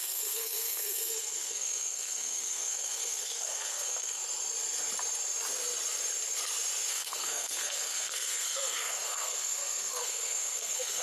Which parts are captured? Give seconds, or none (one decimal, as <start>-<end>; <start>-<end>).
4.2-6.9

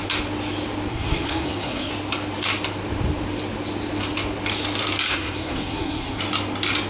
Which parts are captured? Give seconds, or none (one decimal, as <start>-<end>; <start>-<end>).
0.0-0.9; 1.9-5.1; 6.2-6.9

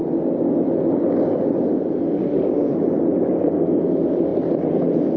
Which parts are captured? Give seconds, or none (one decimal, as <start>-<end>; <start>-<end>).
0.0-2.1; 2.7-5.2

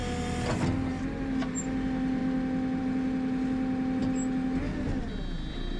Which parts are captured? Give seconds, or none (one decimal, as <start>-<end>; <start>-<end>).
0.0-5.8